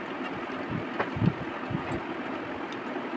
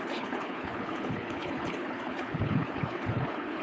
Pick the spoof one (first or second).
second